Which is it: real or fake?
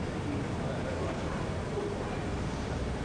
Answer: real